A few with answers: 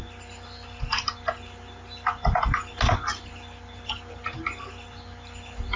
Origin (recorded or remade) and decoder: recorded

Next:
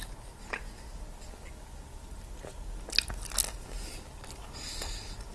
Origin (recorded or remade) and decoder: recorded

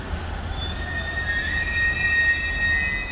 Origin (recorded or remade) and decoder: recorded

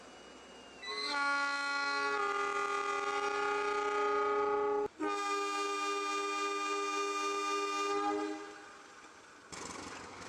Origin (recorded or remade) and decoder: recorded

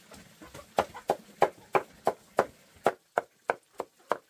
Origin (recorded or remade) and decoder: recorded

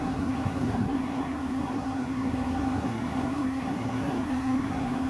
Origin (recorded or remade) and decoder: remade, codec, SNAC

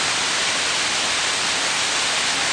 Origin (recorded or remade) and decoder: recorded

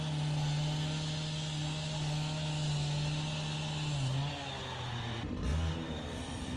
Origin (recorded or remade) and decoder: recorded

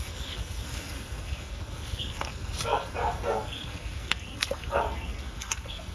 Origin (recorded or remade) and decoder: remade, codec, SNAC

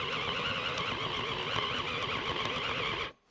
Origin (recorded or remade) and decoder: recorded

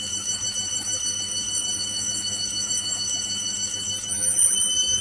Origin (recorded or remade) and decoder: remade, autoencoder, DAC-VAE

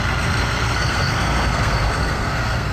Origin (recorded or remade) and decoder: remade, codec, SNAC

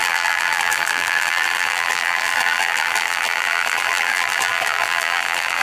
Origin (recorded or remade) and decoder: remade, vocoder, BigVGAN v2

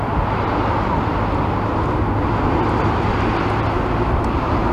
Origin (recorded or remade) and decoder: recorded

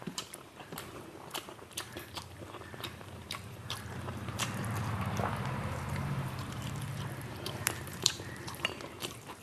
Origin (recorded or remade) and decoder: remade, vocoder, BigVGAN v2